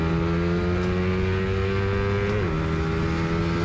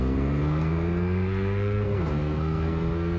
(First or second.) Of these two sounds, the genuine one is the first